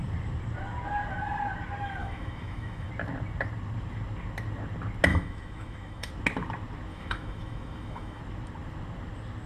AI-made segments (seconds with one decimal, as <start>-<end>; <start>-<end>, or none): 2.0-2.9; 5.1-6.1; 6.9-8.2